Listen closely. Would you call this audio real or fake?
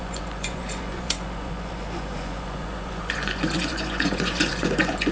fake